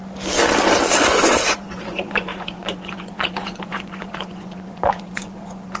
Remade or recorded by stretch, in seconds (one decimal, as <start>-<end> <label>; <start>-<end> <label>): 0.0-1.1 recorded; 1.1-5.8 remade